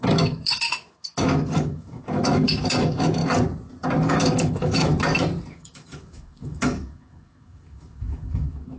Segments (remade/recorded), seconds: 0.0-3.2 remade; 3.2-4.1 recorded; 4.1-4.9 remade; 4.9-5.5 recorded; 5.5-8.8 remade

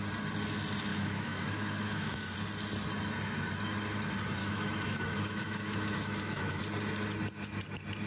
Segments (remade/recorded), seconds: 0.0-0.9 recorded; 0.9-2.3 remade; 2.3-4.4 recorded; 4.4-6.6 remade; 6.6-8.1 recorded

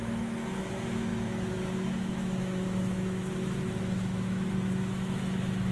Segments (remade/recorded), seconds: 0.0-5.7 remade

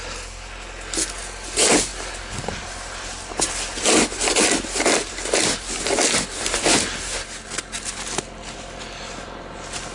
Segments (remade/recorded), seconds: 0.0-9.9 recorded

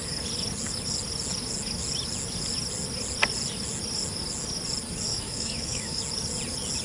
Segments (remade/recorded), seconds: 0.0-5.1 recorded; 5.1-6.0 remade; 6.0-6.8 recorded

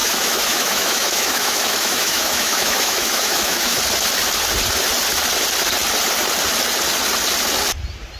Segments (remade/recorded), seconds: 0.0-3.8 remade; 3.8-8.2 recorded

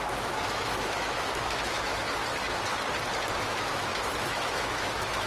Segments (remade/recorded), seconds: 0.0-2.2 remade; 2.2-3.4 recorded; 3.4-5.3 remade

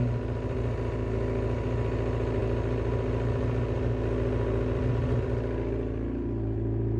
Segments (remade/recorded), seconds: 0.0-7.0 recorded